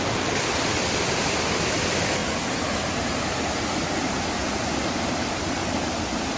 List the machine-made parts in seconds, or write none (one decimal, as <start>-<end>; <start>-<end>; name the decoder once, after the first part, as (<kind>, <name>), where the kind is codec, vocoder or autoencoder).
none